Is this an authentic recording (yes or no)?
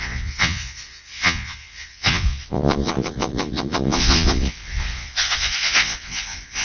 no